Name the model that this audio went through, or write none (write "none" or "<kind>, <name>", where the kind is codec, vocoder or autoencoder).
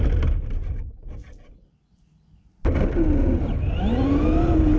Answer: none